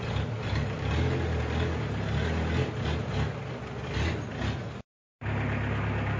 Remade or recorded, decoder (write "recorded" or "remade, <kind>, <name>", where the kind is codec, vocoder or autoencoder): recorded